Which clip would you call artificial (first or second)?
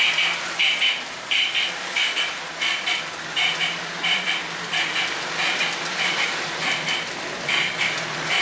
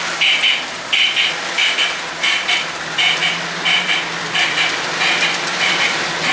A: first